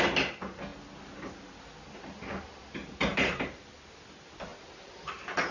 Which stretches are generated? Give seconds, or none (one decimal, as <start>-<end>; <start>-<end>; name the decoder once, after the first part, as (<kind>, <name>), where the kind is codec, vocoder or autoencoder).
2.8-3.7 (vocoder, BigVGAN v2); 4.5-5.1